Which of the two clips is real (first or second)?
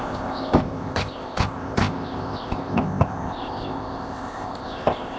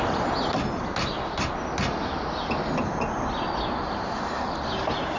second